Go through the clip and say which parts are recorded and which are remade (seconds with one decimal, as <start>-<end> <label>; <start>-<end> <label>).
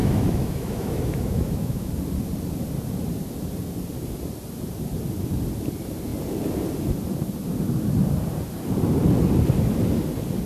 0.0-1.9 remade; 1.9-10.5 recorded